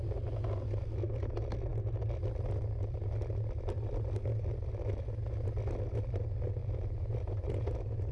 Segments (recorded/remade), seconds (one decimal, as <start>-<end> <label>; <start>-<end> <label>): 0.0-6.6 recorded; 6.6-8.1 remade